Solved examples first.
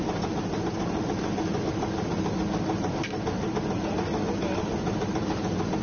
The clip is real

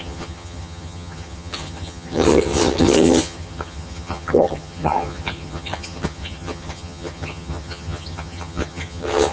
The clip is fake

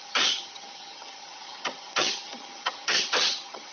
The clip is fake